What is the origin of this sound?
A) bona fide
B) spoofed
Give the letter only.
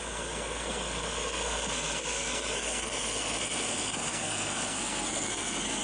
B